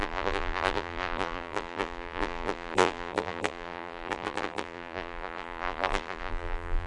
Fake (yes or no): yes